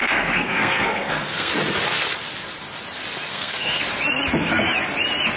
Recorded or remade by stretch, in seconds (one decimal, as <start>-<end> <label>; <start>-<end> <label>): 0.0-1.5 remade; 1.5-3.3 recorded; 3.3-3.8 remade; 3.8-5.4 recorded